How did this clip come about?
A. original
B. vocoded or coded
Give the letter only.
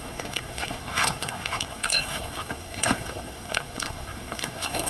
B